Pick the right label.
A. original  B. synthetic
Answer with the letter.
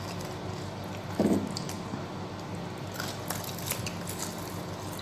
A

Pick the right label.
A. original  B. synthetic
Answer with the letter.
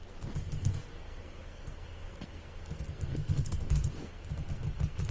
B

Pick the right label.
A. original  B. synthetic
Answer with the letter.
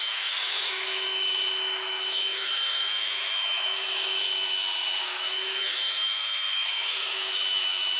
B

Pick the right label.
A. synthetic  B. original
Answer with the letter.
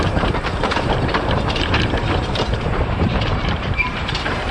A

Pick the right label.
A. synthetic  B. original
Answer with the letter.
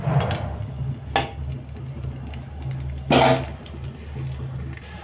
B